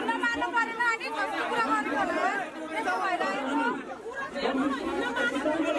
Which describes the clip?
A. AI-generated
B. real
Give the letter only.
B